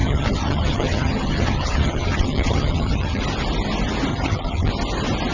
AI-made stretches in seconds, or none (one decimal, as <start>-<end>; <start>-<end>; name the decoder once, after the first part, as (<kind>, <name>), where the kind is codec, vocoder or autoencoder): 0.0-3.2 (vocoder, HiFi-GAN); 4.1-4.7